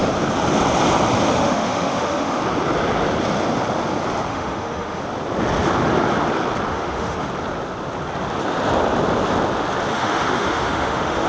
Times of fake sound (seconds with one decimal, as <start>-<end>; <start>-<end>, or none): 1.3-2.4; 4.3-5.0; 6.7-7.3; 9.9-11.3